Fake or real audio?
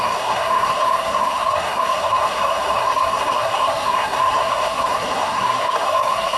fake